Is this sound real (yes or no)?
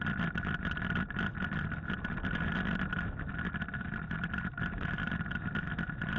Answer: yes